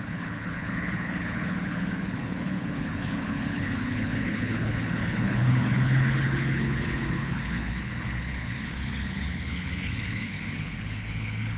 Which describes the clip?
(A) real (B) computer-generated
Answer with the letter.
B